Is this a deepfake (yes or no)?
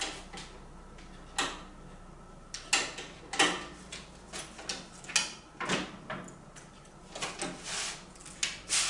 no